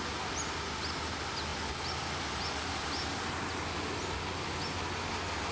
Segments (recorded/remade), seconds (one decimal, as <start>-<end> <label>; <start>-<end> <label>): 0.0-5.5 recorded